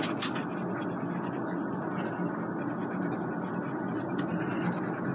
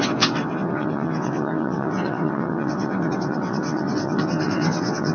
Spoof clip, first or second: second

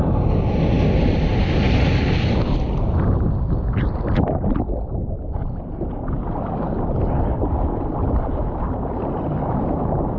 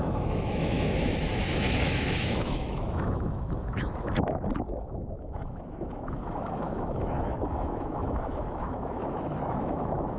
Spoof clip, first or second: second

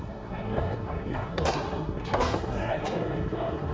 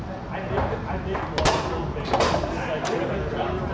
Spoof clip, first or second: first